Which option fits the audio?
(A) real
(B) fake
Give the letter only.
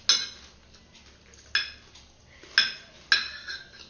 A